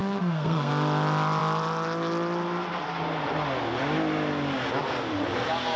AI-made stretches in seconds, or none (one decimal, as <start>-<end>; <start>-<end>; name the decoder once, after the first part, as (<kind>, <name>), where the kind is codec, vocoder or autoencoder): 0.0-0.7 (codec, SNAC)